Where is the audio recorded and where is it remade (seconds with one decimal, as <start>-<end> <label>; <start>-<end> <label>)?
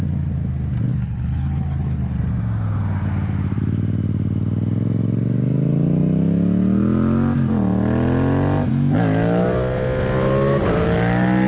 0.0-0.9 recorded; 0.9-2.3 remade; 2.3-11.5 recorded